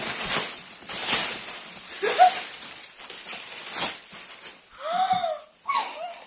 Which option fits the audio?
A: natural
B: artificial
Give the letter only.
B